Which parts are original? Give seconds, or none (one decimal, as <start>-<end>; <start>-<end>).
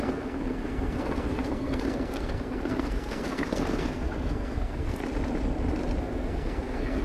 5.0-6.0